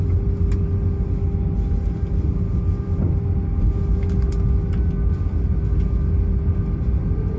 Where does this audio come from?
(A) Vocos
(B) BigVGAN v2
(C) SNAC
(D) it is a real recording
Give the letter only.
D